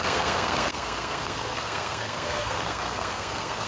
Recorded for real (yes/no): no